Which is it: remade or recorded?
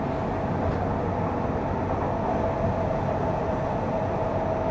recorded